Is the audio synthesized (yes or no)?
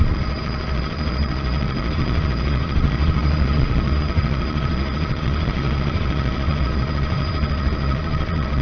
yes